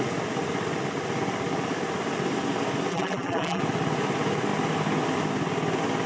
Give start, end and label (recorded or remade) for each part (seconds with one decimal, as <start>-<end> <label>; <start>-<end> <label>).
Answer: 0.0-2.9 recorded; 2.9-3.6 remade; 3.6-6.1 recorded